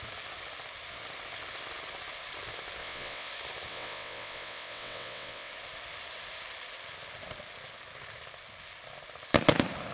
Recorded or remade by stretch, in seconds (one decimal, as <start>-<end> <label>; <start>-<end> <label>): 0.0-2.8 recorded; 2.8-3.3 remade; 3.3-3.7 recorded; 3.7-5.5 remade; 5.5-9.9 recorded